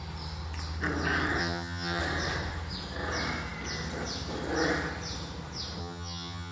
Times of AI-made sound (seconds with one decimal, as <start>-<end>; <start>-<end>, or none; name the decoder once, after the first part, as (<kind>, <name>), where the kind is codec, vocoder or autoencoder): 1.4-2.0 (vocoder, HiFi-GAN); 5.8-6.5